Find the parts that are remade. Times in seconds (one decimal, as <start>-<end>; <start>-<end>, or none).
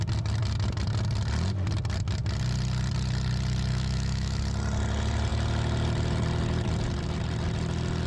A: 3.7-4.4